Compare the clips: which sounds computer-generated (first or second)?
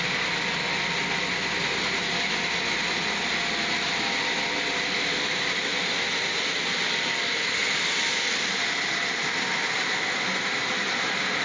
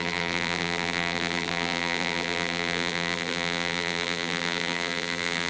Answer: second